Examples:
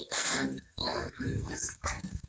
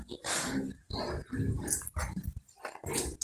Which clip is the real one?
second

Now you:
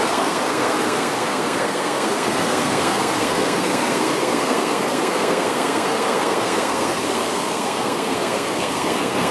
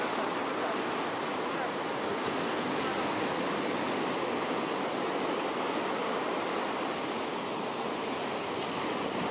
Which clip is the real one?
second